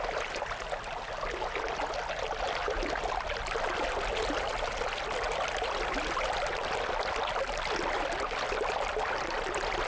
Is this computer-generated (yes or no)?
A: no